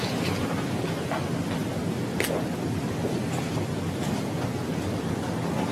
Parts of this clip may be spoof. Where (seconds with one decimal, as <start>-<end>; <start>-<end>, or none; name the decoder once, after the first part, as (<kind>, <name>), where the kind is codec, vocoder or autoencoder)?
none